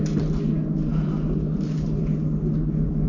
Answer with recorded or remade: recorded